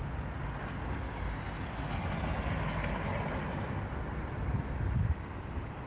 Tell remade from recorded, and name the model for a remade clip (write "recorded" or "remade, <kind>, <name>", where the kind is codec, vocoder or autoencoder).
recorded